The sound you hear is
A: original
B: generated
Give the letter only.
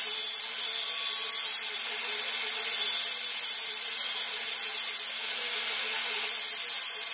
A